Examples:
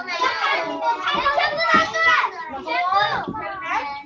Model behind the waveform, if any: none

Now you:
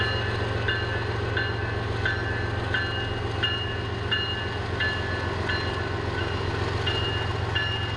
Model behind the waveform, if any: none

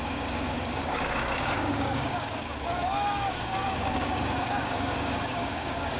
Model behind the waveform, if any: codec, DAC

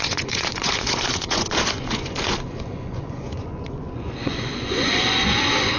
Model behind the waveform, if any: vocoder, Vocos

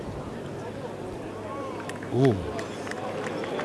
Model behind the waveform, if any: none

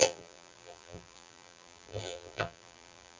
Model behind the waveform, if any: vocoder, BigVGAN v2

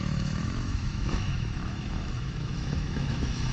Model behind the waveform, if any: autoencoder, DAC-VAE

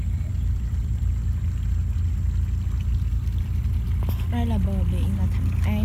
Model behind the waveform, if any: none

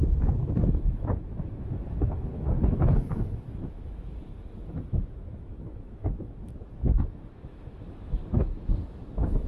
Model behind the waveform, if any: autoencoder, DAC-VAE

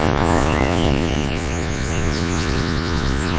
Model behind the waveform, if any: vocoder, Vocos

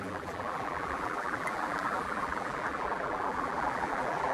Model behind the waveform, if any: vocoder, BigVGAN v2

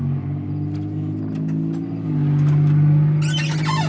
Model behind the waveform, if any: none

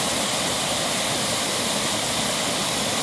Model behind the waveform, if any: none